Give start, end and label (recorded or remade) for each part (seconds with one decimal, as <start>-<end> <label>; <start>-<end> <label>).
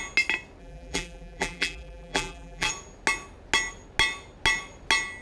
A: 0.0-0.6 recorded; 0.6-2.7 remade; 2.7-5.2 recorded